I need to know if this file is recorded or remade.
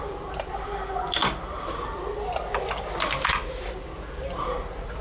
recorded